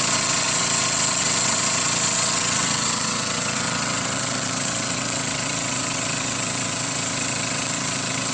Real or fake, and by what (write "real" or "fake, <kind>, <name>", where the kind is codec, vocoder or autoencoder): fake, vocoder, WaveNeXt